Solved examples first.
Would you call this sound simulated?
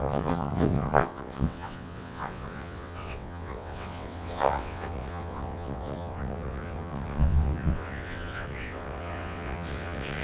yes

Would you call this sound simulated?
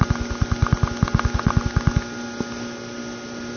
no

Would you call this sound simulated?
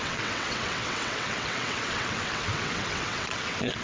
yes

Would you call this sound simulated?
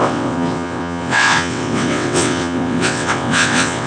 yes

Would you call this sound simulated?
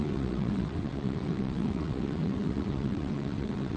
yes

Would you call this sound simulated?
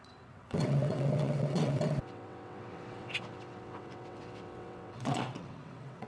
yes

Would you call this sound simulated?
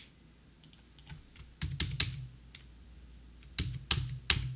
no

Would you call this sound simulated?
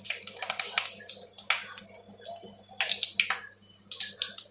no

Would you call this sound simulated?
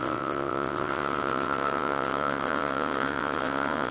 yes